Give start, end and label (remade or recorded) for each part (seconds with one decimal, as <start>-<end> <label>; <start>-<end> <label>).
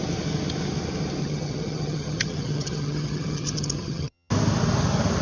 0.0-1.2 recorded; 1.2-4.3 remade; 4.3-5.2 recorded